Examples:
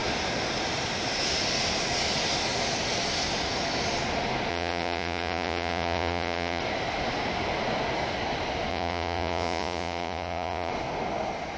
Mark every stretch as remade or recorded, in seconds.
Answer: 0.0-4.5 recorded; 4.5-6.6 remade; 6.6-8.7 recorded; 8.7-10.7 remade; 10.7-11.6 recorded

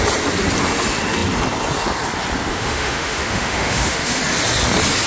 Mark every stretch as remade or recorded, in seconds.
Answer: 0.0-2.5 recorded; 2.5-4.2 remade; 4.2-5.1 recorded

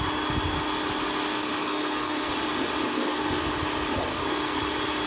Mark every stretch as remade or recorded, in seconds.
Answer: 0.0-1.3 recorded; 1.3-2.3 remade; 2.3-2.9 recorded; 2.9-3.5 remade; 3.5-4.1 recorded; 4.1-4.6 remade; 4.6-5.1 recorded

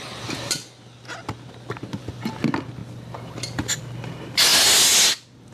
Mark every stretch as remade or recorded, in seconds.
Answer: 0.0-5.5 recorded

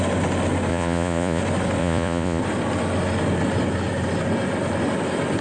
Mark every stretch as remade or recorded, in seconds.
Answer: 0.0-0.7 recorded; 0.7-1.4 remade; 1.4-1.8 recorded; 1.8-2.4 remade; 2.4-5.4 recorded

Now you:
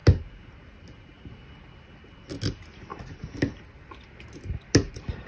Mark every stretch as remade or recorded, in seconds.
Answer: 0.0-5.3 recorded

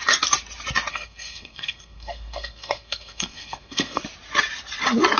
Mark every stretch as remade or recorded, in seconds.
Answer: 0.0-0.9 recorded; 0.9-4.0 remade; 4.0-5.2 recorded

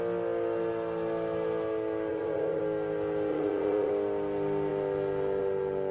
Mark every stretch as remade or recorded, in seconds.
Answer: 0.0-2.1 recorded; 2.1-2.6 remade; 2.6-3.3 recorded; 3.3-3.9 remade; 3.9-5.9 recorded